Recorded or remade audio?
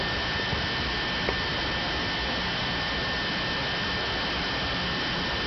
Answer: recorded